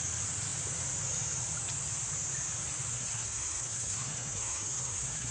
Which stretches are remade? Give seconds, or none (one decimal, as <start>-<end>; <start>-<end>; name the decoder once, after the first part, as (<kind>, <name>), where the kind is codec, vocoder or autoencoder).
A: 2.9-5.3 (codec, SNAC)